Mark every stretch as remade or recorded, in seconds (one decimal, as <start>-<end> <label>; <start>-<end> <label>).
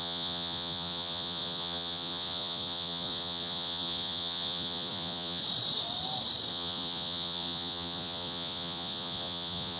0.0-5.4 remade; 5.4-6.5 recorded; 6.5-9.8 remade